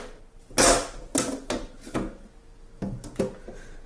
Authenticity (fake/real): real